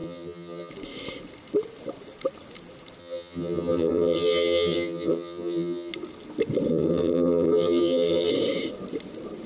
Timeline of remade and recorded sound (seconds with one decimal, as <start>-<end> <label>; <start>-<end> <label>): 0.0-0.7 remade; 0.7-3.0 recorded; 3.0-5.9 remade; 5.9-6.7 recorded; 6.7-8.3 remade; 8.3-9.5 recorded